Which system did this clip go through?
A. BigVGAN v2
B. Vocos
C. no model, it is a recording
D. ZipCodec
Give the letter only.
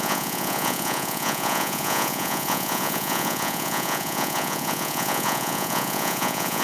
B